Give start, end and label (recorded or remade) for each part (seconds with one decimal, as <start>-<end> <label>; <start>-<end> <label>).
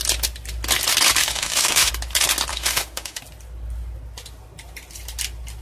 0.0-1.2 recorded; 1.2-1.9 remade; 1.9-2.5 recorded; 2.5-3.2 remade; 3.2-5.6 recorded